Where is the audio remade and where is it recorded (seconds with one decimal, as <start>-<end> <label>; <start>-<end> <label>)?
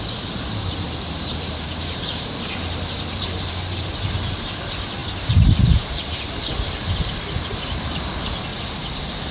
0.0-8.5 remade; 8.5-9.3 recorded